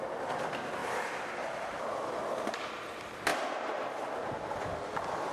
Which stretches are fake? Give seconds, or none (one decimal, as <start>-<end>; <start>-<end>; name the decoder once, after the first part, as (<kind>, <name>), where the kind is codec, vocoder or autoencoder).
none